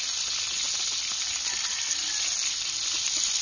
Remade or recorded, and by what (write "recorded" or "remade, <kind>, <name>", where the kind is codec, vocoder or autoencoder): recorded